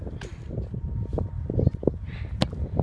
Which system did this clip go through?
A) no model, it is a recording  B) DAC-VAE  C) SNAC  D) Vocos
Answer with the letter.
A